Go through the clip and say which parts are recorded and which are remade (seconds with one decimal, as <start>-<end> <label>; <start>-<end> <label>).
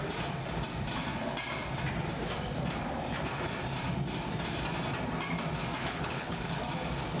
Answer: 0.0-5.8 recorded; 5.8-6.6 remade; 6.6-7.2 recorded